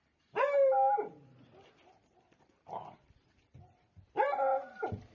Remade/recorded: recorded